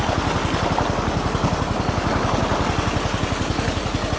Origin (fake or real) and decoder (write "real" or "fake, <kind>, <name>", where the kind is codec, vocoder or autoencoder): real